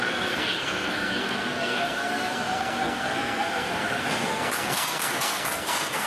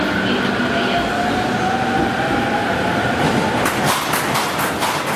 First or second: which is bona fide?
second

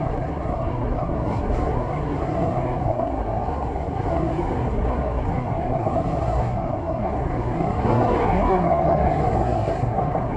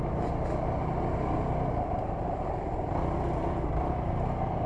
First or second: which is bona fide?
second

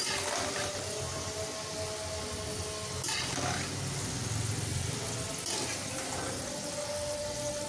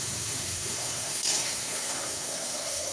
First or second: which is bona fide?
first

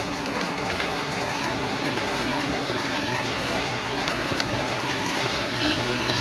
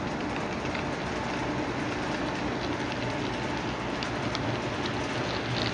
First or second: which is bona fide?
second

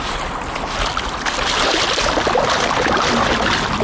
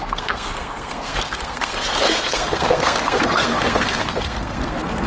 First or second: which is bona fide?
first